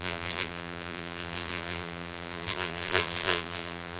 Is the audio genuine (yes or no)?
no